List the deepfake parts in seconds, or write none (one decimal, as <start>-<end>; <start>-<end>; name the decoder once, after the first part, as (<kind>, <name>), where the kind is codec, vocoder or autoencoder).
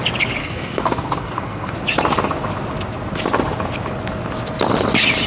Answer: 0.4-1.7 (codec, SNAC)